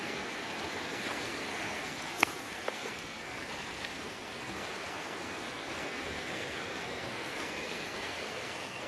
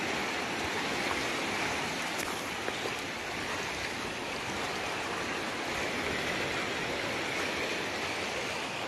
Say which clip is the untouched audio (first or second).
second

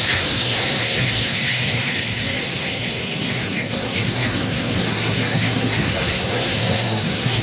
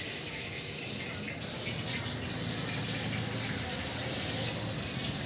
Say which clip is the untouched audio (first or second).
second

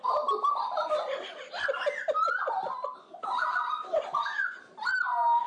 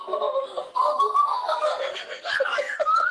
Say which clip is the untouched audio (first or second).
first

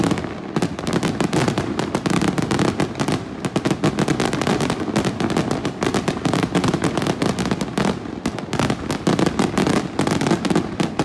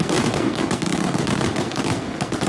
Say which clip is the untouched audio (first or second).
first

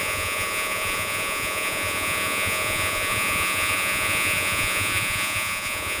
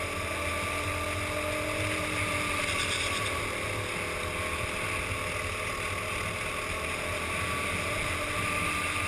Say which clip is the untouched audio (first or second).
second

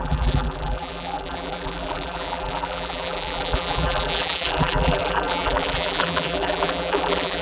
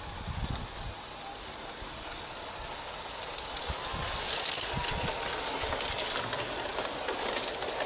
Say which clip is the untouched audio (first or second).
second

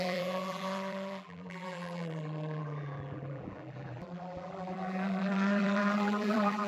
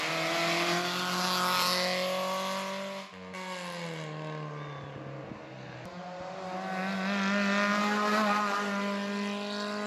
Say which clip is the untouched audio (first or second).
second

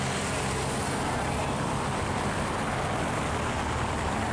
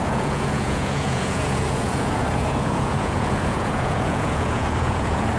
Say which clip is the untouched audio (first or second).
first